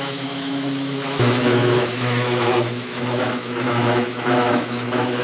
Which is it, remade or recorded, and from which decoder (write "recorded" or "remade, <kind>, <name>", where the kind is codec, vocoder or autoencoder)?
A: remade, autoencoder, DAC-VAE